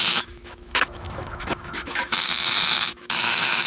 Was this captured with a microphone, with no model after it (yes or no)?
no